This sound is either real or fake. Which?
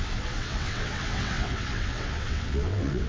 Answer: fake